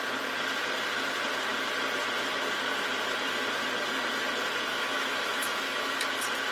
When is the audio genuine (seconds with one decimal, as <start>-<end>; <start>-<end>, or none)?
0.0-4.7; 6.0-6.5